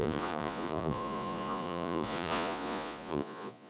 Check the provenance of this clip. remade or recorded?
remade